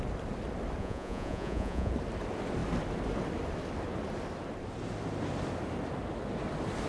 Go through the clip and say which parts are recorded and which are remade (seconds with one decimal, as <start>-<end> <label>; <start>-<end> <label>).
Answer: 0.0-0.8 recorded; 0.8-1.9 remade; 1.9-6.9 recorded